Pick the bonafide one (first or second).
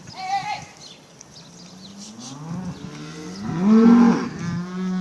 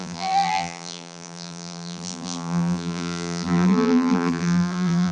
first